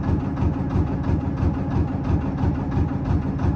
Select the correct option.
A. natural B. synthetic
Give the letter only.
A